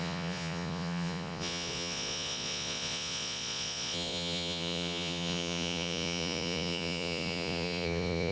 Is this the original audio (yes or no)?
no